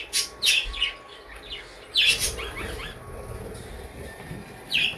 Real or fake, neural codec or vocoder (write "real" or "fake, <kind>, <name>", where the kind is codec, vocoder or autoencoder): real